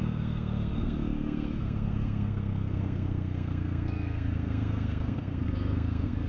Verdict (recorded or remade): remade